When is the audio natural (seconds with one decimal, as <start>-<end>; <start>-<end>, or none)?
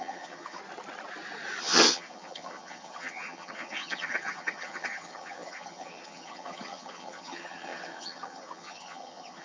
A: 0.6-1.6